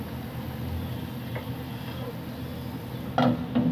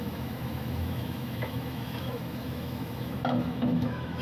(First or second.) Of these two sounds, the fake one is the second